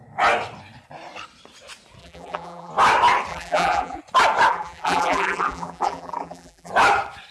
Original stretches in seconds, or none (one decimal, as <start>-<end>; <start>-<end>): 0.0-2.0; 2.7-3.3; 4.0-4.5; 6.7-7.3